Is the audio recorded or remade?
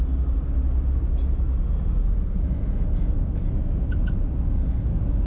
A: recorded